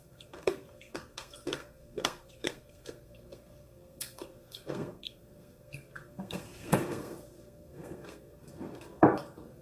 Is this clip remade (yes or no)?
yes